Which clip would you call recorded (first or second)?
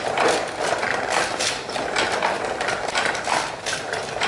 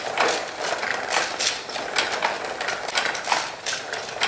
second